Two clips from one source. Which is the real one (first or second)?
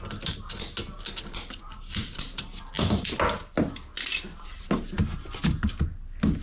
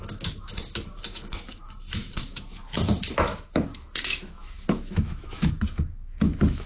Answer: first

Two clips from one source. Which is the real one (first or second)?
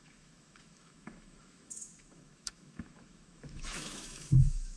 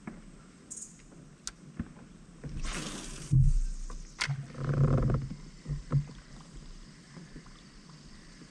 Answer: second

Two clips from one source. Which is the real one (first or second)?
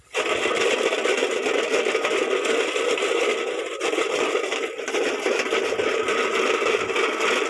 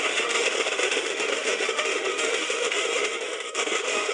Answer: first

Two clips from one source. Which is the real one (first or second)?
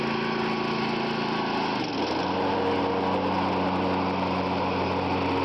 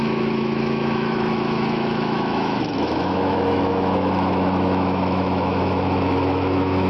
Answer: first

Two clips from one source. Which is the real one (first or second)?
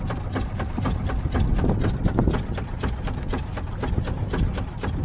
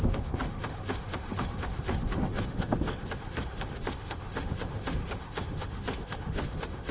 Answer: first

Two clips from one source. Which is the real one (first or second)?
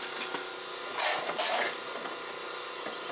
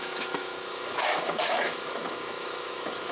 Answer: first